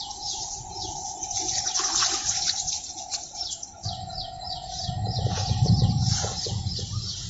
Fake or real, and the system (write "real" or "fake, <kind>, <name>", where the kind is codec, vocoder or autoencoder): fake, vocoder, Vocos